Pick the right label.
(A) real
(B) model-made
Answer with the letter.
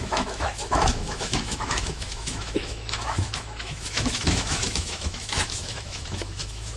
B